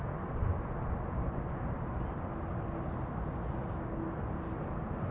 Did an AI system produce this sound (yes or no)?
no